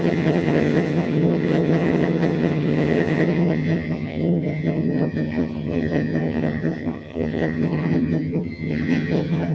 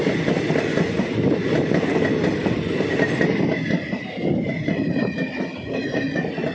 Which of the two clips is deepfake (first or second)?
first